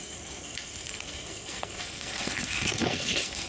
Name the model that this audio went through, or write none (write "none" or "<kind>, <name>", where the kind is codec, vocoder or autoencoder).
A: codec, SNAC